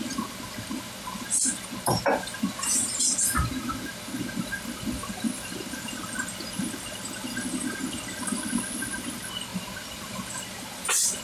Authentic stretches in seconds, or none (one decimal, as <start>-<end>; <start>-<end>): 0.0-9.5